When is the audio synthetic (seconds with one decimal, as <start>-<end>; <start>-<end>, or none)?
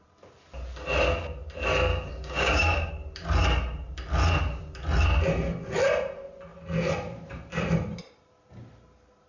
1.9-2.9